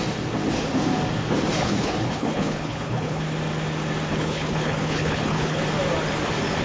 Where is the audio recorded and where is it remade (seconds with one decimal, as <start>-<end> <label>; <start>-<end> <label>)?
0.0-1.6 recorded; 1.6-3.2 remade; 3.2-4.1 recorded; 4.1-5.6 remade; 5.6-6.6 recorded